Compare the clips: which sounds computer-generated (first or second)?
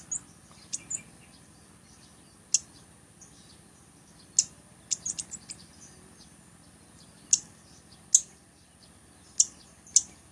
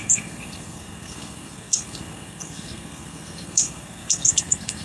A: second